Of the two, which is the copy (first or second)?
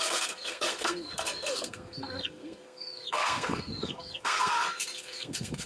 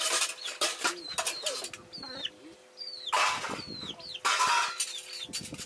first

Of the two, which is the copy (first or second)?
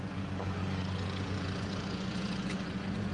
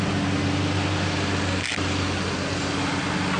first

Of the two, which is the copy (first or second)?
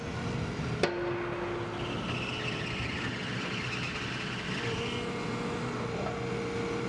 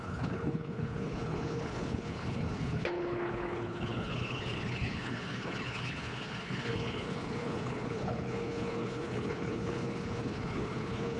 second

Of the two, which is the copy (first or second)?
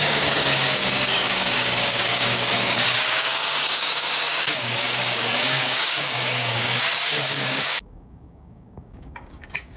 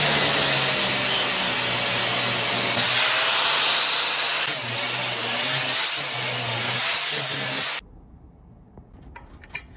first